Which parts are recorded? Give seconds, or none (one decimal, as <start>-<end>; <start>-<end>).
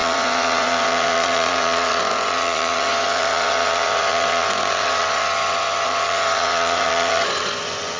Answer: none